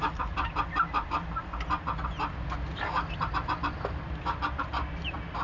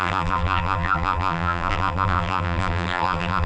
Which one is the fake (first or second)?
second